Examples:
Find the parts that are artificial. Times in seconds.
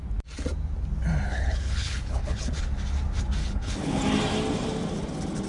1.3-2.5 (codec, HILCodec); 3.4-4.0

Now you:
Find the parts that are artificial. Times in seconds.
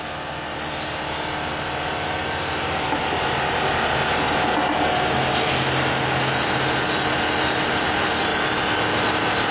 none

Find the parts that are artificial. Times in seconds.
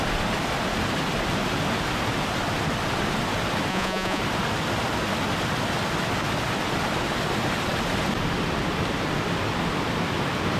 3.7-4.2 (vocoder, Vocos)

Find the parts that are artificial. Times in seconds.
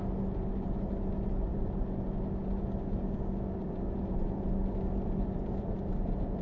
3.6-6.4 (vocoder, BigVGAN v2)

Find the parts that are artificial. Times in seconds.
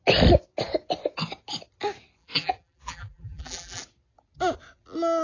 2.2-3.8 (vocoder, BigVGAN v2)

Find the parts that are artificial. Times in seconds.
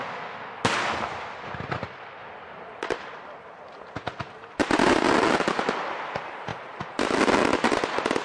2.2-4.6 (vocoder, BigVGAN v2); 6.5-7.2